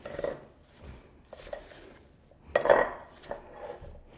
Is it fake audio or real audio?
real